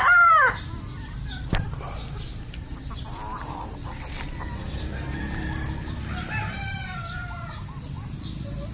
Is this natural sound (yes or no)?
no